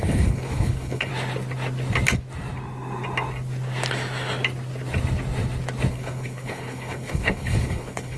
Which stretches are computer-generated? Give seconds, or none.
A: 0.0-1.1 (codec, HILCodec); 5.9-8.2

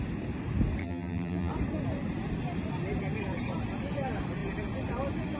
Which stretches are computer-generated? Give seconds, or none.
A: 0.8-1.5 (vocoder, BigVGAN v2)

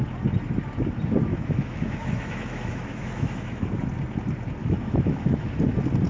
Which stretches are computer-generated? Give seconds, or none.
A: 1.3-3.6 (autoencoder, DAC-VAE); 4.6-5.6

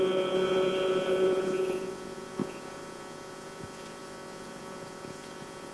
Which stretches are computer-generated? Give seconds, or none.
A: 0.0-5.7 (vocoder, Vocos)

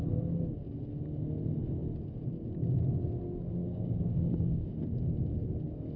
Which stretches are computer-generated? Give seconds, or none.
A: 3.6-4.7 (codec, DAC)